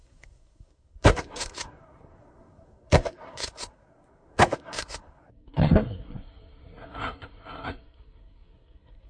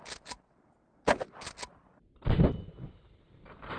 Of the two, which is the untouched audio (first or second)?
second